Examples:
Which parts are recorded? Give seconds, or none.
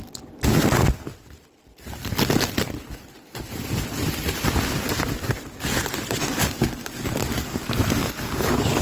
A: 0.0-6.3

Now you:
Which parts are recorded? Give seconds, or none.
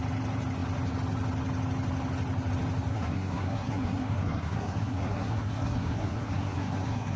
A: 0.0-2.9